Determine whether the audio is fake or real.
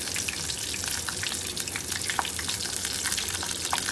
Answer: real